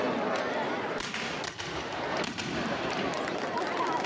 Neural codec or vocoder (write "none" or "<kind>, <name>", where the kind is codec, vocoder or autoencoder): vocoder, BigVGAN v2